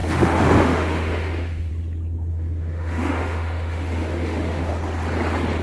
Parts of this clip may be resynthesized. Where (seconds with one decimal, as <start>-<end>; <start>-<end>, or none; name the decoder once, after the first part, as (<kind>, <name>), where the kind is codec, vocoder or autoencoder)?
0.0-1.7 (autoencoder, DAC-VAE); 2.3-4.7